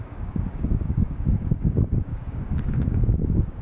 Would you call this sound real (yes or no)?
no